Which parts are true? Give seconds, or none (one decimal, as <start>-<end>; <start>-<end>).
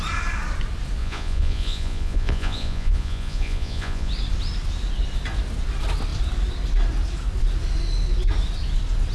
0.0-1.0; 4.1-9.1